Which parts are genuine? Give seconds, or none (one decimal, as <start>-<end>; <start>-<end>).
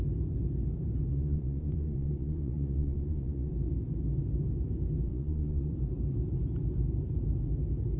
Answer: 0.0-1.1; 3.5-5.1; 5.7-8.0